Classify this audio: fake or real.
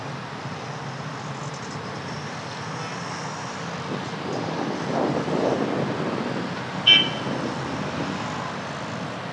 real